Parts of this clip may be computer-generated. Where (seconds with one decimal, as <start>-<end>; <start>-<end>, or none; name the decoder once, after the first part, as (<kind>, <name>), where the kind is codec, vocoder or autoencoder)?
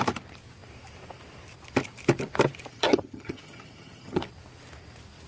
2.7-4.2 (vocoder, HiFi-GAN)